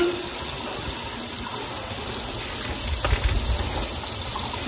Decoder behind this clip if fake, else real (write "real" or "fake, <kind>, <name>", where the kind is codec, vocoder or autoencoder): real